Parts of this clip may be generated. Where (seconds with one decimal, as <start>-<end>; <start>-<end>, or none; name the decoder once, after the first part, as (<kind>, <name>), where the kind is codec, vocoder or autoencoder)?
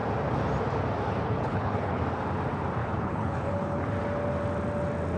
1.2-2.0 (codec, HILCodec); 2.8-3.9